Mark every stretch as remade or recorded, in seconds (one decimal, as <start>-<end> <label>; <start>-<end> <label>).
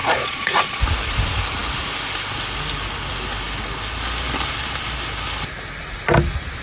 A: 0.0-0.8 remade; 0.8-6.6 recorded